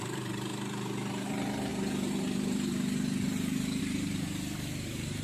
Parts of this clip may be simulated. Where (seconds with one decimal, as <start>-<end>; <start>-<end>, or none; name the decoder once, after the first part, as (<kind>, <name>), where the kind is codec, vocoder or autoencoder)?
0.0-0.5 (vocoder, BigVGAN v2); 1.1-5.2